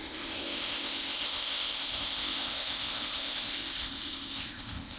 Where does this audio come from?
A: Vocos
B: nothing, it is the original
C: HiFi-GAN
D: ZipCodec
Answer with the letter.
D